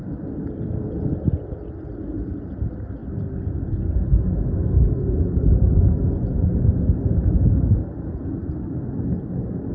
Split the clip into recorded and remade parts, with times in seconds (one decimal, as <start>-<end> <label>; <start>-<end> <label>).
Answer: 0.0-4.1 remade; 4.1-9.7 recorded